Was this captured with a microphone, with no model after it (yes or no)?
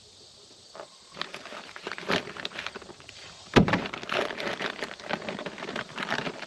no